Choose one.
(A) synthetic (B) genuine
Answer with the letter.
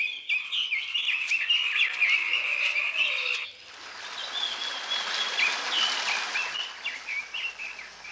B